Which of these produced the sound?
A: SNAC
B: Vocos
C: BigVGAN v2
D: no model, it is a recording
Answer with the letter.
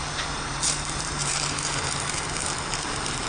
C